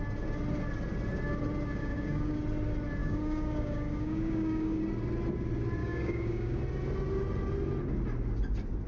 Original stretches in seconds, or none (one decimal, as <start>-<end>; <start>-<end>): 0.0-1.8; 2.4-3.0; 4.8-5.8; 6.6-8.9